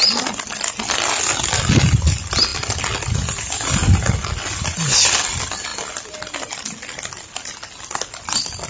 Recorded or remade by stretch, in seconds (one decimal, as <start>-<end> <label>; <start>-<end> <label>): 0.0-8.7 recorded